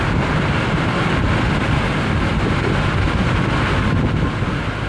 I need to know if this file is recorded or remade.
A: recorded